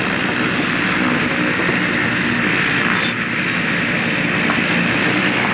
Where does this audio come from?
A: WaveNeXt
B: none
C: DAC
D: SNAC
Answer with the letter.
B